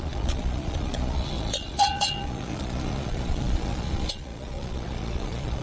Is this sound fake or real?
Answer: fake